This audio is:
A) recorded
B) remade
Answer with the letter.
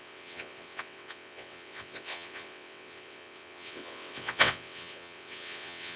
B